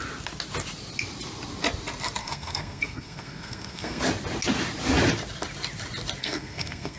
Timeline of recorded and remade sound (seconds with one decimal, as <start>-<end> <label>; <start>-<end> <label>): 0.0-2.2 recorded; 2.2-4.0 remade; 4.0-6.2 recorded; 6.2-7.0 remade